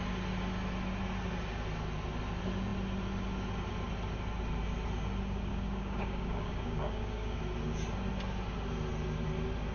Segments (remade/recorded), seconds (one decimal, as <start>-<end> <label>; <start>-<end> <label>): 0.0-5.5 recorded; 5.5-7.4 remade; 7.4-9.7 recorded